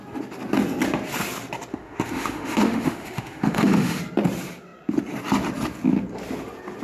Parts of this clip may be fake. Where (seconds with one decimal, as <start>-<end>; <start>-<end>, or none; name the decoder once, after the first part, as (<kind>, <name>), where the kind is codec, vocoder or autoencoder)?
1.7-4.0 (autoencoder, DAC-VAE)